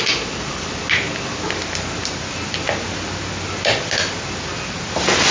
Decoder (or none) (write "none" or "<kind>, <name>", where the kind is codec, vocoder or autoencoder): none